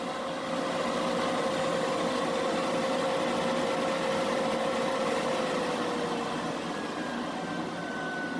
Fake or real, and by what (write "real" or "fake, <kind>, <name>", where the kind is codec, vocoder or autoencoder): real